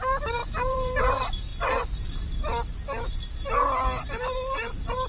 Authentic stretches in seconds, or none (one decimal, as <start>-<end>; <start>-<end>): 0.0-0.4; 1.0-1.5; 2.8-5.1